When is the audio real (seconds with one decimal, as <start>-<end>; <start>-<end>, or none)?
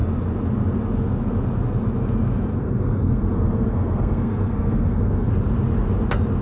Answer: 0.0-2.5; 5.3-6.4